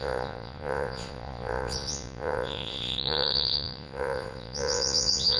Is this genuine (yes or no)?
no